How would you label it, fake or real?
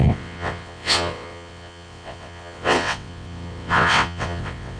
fake